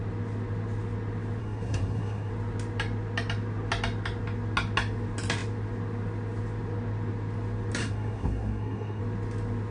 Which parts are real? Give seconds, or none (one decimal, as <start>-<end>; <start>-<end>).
0.0-1.4; 2.3-7.8; 9.0-9.7